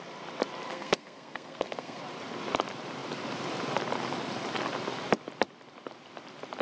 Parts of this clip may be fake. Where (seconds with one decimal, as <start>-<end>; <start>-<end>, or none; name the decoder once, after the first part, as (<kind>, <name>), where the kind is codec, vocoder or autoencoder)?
0.7-2.0 (codec, SNAC)